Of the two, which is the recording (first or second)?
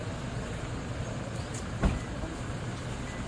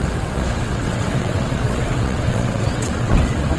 first